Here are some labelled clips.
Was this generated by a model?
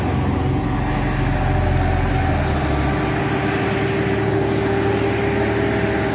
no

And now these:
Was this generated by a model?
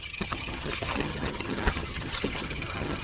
yes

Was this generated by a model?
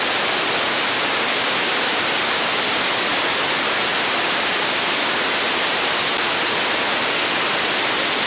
no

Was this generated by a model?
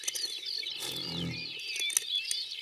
no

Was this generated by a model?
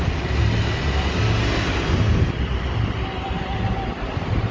no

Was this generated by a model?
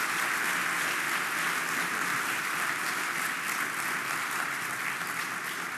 no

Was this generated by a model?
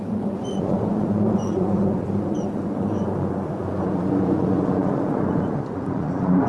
yes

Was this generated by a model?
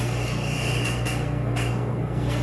yes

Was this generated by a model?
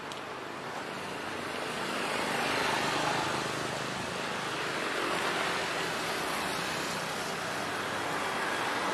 no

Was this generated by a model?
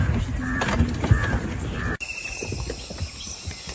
no